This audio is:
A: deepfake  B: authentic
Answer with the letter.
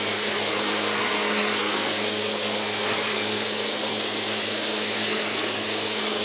A